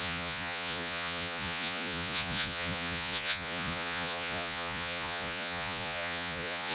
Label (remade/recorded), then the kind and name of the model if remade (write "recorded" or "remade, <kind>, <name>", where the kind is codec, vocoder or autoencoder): remade, vocoder, Vocos